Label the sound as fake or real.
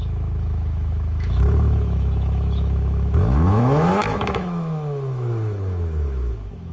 fake